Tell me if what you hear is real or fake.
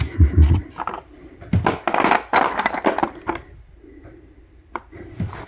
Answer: real